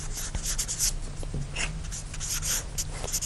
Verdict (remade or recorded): recorded